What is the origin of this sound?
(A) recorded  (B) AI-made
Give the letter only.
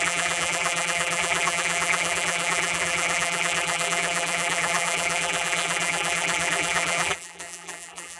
B